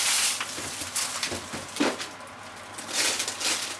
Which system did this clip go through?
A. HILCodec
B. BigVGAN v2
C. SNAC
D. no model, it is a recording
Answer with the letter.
D